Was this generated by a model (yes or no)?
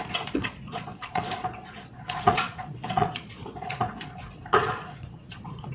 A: yes